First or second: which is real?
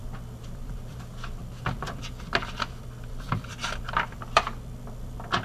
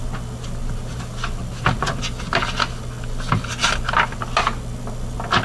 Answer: second